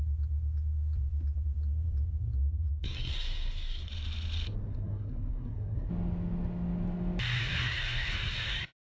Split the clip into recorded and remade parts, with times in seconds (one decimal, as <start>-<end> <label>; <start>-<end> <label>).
0.0-2.8 recorded; 2.8-3.9 remade; 3.9-4.7 recorded; 4.7-5.9 remade; 5.9-7.4 recorded; 7.4-8.9 remade